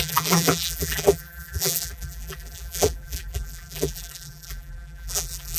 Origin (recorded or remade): remade